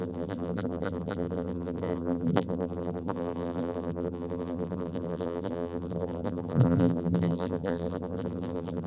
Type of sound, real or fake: fake